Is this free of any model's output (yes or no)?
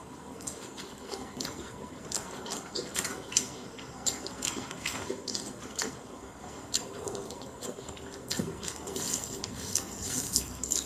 no